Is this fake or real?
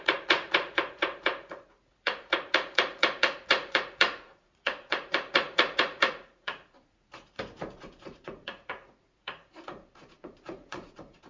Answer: fake